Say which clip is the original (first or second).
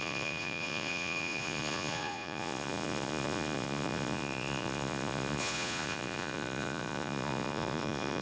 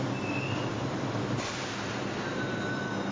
second